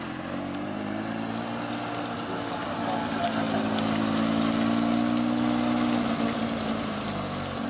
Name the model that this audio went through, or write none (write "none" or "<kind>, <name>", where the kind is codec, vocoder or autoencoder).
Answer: none